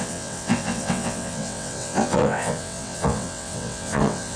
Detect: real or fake fake